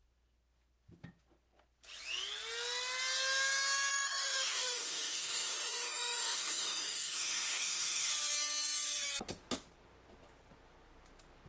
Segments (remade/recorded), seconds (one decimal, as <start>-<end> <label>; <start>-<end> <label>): 0.0-3.9 recorded; 3.9-8.1 remade; 8.1-11.5 recorded